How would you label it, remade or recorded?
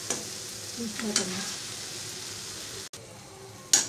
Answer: recorded